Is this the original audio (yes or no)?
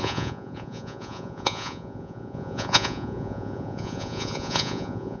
no